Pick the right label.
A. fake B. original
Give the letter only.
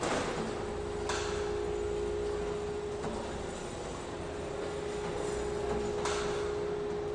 B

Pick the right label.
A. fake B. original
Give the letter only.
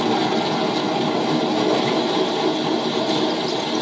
B